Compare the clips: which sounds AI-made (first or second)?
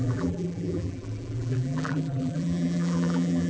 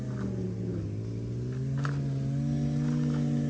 first